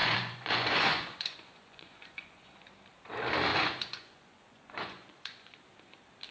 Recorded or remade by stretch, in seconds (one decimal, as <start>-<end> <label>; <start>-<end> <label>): 0.0-2.5 remade; 2.5-3.5 recorded; 3.5-5.6 remade; 5.6-6.3 recorded